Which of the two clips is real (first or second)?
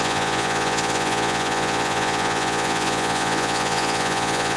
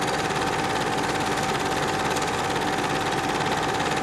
second